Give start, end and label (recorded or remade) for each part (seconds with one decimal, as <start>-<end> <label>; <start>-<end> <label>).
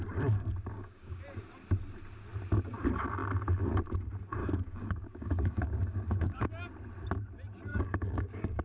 0.0-0.7 recorded; 0.7-1.2 remade; 1.2-4.4 recorded; 4.4-6.5 remade; 6.5-7.7 recorded; 7.7-8.6 remade